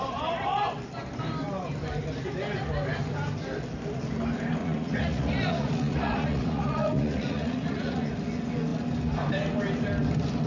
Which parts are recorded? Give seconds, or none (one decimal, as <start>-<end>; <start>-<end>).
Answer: 0.0-4.6; 8.1-10.5